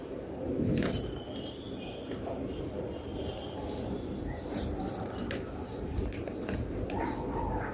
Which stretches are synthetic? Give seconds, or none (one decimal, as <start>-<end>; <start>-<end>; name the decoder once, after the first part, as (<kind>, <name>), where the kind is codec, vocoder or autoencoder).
0.0-2.0 (vocoder, BigVGAN v2); 2.6-7.7